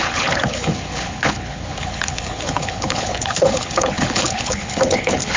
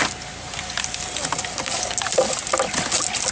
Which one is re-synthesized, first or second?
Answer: first